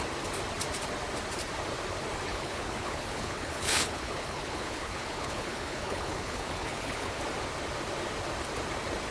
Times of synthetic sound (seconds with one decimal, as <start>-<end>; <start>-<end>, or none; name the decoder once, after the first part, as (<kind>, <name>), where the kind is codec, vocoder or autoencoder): 2.3-7.2 (codec, HILCodec)